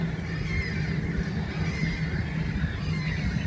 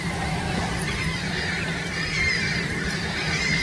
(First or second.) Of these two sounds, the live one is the first